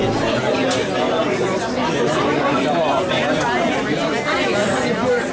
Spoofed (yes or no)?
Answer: no